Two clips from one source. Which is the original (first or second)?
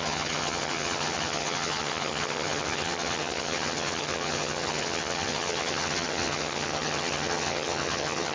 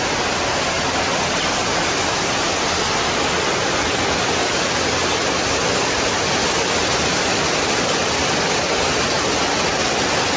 second